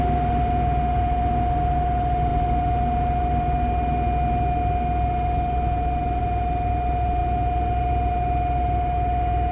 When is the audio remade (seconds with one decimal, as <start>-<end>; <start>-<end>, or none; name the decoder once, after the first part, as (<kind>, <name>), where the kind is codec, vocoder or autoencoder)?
none